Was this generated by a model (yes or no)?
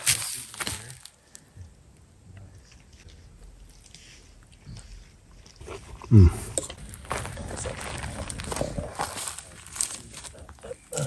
no